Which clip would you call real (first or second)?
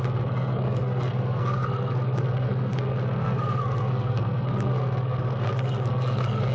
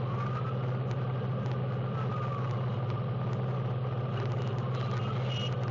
second